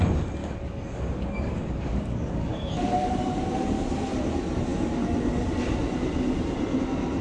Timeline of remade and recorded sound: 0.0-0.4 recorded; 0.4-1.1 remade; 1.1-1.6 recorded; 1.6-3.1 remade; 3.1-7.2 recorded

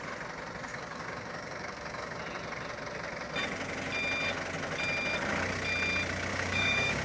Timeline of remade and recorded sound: 0.0-0.7 recorded; 0.7-2.2 remade; 2.2-6.3 recorded; 6.3-7.0 remade